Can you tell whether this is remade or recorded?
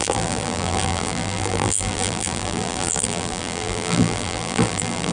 remade